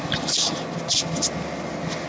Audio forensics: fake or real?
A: real